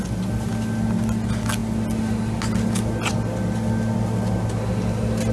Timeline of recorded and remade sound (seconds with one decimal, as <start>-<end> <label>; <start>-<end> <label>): 0.0-5.3 recorded